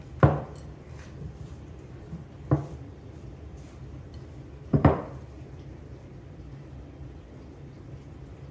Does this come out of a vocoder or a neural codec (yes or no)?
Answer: yes